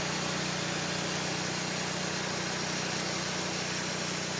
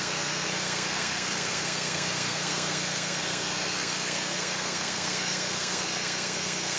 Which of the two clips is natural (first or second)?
first